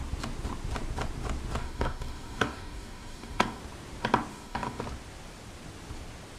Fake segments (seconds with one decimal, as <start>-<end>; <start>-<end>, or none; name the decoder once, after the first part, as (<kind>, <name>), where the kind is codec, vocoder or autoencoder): 1.6-3.6 (codec, DAC); 4.3-4.8

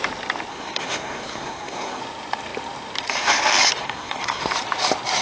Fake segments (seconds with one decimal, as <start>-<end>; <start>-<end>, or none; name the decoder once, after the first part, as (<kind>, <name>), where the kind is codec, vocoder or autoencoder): 0.5-2.0 (codec, SNAC); 3.8-4.4

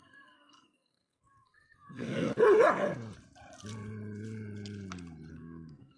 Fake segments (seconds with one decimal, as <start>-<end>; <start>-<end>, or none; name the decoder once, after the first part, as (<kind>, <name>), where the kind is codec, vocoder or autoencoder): 0.0-2.3 (codec, SNAC); 5.3-6.0

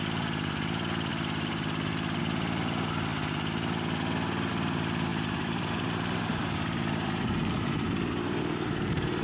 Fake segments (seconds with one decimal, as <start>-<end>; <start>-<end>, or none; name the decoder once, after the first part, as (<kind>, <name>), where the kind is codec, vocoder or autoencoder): 1.1-2.2 (vocoder, BigVGAN v2); 5.1-8.4

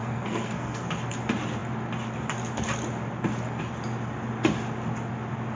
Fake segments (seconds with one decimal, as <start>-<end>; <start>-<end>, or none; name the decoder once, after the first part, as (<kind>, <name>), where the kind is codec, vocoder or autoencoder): 0.0-0.9 (codec, SNAC)